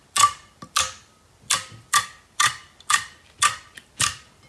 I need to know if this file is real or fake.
real